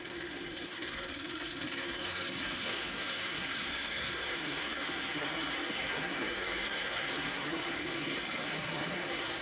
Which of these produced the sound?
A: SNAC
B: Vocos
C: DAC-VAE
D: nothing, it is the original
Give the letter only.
A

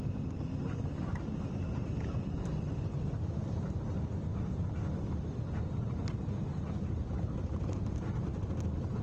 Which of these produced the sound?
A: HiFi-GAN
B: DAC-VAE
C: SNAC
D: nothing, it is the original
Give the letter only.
D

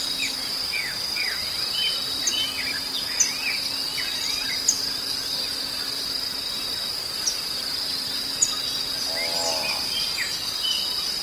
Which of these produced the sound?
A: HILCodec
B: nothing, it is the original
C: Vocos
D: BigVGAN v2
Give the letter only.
B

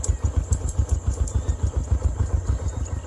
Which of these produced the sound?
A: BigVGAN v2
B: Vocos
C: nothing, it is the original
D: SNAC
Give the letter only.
C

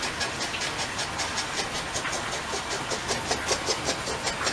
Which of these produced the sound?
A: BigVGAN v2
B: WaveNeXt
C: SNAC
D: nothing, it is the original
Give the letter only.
D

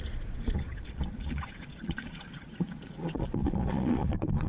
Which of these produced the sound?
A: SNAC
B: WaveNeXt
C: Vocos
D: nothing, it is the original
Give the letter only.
C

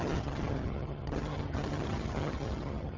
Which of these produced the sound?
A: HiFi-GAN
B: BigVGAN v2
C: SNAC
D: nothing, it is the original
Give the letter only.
A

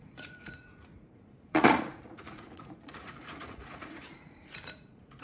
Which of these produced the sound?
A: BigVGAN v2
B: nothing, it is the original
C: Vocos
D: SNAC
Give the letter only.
C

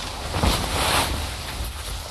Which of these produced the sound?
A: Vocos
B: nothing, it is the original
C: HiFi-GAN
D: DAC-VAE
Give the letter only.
B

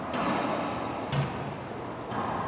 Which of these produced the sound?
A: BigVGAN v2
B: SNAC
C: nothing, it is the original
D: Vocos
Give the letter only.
C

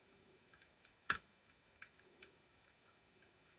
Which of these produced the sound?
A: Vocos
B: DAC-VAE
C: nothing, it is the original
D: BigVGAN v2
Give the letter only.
B